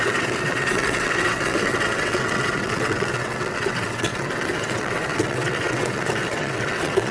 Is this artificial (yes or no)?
yes